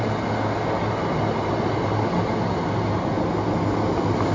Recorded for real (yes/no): yes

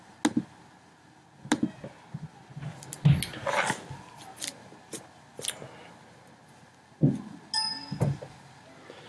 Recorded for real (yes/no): yes